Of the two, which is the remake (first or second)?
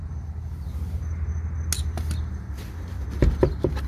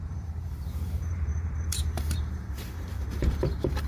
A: second